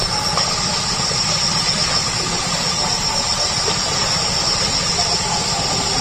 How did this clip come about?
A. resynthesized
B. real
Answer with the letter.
B